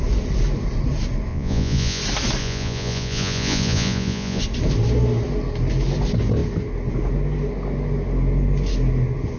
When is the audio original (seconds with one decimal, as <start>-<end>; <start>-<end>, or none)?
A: 0.0-1.3; 2.0-2.4; 4.4-9.4